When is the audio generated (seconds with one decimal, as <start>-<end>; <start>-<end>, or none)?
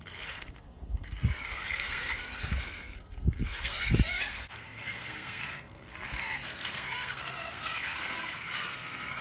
0.0-9.2